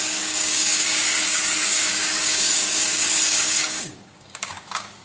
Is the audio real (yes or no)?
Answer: no